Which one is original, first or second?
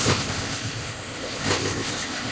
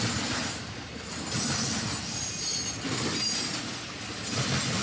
second